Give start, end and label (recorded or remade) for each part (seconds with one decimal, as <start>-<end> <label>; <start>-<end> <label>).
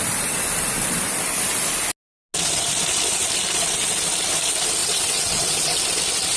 0.0-4.8 recorded; 4.8-5.8 remade; 5.8-6.4 recorded